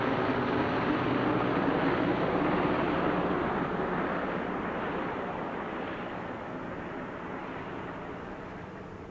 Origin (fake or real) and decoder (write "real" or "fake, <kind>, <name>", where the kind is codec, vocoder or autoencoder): real